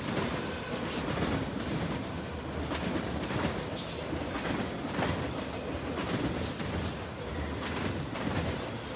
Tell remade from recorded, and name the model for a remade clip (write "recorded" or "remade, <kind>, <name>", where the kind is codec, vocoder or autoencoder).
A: recorded